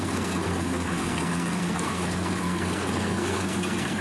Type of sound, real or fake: fake